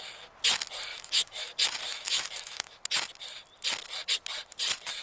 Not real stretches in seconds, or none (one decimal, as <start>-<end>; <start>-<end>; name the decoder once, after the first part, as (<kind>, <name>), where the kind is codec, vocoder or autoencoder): 0.9-1.5 (autoencoder, DAC-VAE); 1.9-2.8